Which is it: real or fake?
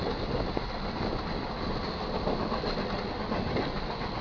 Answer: real